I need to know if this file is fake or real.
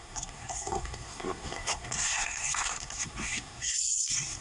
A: fake